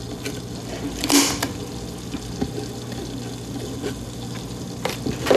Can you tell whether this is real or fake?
real